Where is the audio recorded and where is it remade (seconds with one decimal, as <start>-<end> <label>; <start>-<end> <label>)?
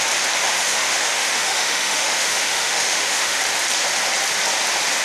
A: 0.0-0.4 recorded; 0.4-3.4 remade; 3.4-5.0 recorded